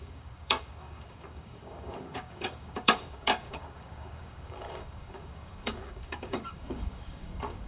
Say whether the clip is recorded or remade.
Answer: remade